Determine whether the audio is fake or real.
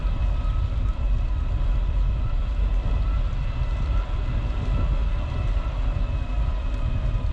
real